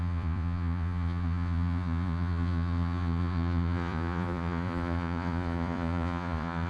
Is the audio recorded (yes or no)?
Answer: no